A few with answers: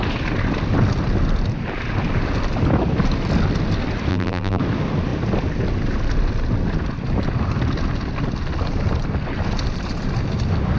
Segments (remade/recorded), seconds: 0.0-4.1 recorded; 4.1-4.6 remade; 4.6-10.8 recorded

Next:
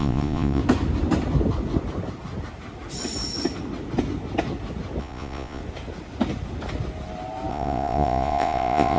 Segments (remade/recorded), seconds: 0.0-0.6 remade; 0.6-5.0 recorded; 5.0-5.6 remade; 5.6-7.5 recorded; 7.5-9.0 remade

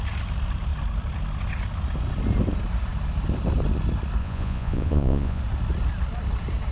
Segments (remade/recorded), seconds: 0.0-4.2 recorded; 4.2-5.4 remade; 5.4-6.7 recorded

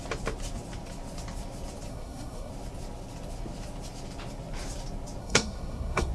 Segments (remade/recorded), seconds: 0.0-1.9 recorded; 1.9-2.5 remade; 2.5-5.2 recorded; 5.2-6.1 remade

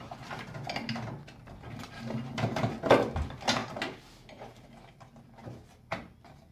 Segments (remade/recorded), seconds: 0.0-6.5 recorded

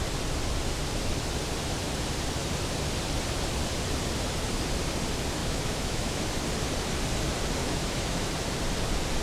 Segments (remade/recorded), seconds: 0.0-5.4 recorded; 5.4-6.2 remade; 6.2-7.6 recorded; 7.6-8.3 remade; 8.3-9.2 recorded